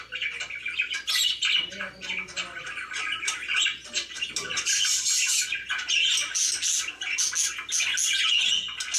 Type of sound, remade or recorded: recorded